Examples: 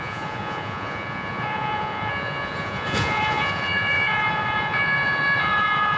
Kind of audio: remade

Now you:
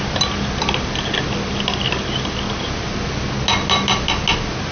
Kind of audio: recorded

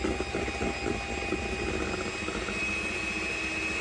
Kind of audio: recorded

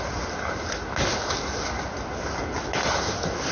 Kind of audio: recorded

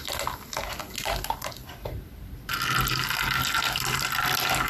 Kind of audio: recorded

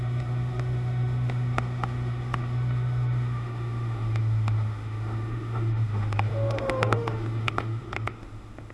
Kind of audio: remade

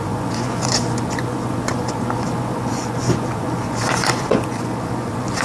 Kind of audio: remade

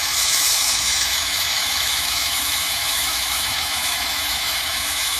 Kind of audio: remade